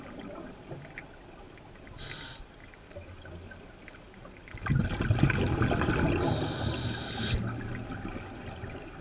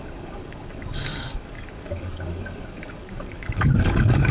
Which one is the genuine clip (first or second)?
first